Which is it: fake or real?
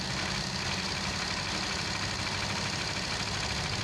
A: real